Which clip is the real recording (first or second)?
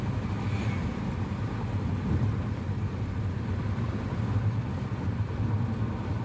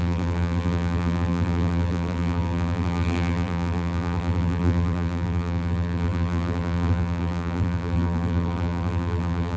first